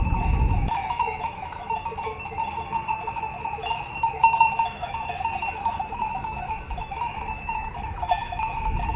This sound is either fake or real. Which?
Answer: fake